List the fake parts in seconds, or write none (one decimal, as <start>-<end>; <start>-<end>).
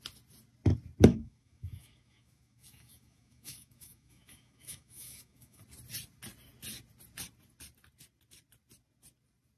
1.1-5.6